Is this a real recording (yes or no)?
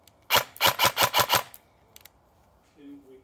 yes